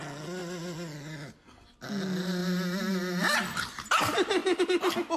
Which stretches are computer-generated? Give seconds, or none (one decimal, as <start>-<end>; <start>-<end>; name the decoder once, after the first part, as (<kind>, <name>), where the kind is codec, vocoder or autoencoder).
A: none